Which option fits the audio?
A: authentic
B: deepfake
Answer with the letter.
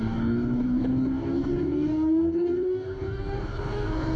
B